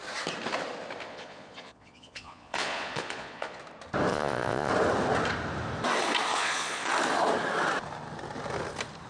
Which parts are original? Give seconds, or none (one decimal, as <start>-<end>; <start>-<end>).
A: 0.0-1.1; 3.6-4.1; 4.7-6.3; 6.9-9.1

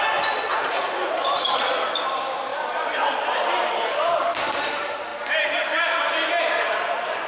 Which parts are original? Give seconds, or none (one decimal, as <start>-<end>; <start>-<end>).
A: 0.0-0.5; 1.7-7.3

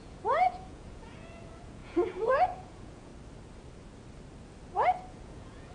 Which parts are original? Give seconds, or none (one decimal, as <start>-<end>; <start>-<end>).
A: 3.1-5.1

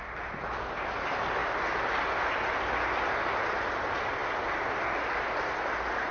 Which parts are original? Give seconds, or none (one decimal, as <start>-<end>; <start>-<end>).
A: 0.0-6.1

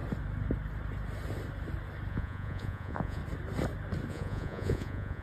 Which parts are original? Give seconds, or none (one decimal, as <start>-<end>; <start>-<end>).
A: 0.0-2.1; 3.2-4.1

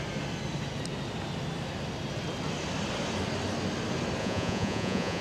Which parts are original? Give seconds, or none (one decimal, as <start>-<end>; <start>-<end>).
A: 0.0-4.2

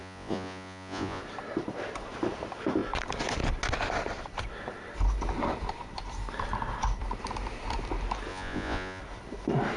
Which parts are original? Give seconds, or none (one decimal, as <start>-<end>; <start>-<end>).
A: 1.2-8.3; 9.0-9.8

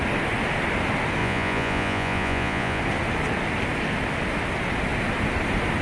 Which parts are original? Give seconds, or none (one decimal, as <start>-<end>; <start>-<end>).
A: 0.0-1.2; 2.8-5.8